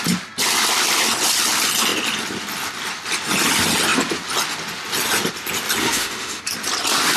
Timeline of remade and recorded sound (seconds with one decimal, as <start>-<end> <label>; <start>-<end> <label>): 0.0-5.8 recorded; 5.8-6.4 remade; 6.4-7.2 recorded

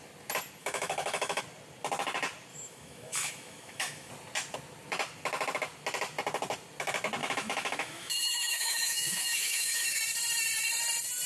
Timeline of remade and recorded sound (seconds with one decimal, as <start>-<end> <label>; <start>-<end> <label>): 0.0-0.6 recorded; 0.6-1.4 remade; 1.4-2.5 recorded; 2.5-4.1 remade; 4.1-7.2 recorded; 7.2-10.0 remade; 10.0-11.3 recorded